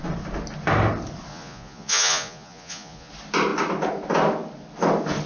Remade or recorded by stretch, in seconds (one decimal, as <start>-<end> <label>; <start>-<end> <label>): 0.0-1.3 recorded; 1.3-3.1 remade; 3.1-5.3 recorded